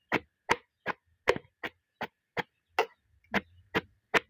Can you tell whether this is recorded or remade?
recorded